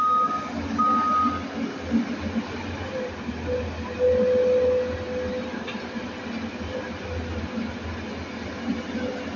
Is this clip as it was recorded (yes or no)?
yes